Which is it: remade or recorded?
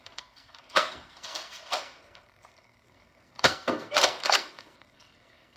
remade